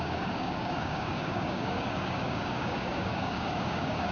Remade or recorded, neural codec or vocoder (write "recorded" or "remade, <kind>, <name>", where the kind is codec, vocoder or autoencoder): remade, codec, DAC